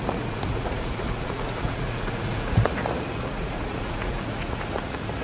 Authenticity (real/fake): fake